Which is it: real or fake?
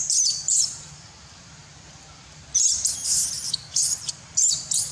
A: fake